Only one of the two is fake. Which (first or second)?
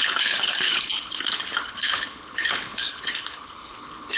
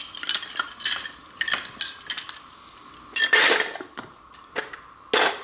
first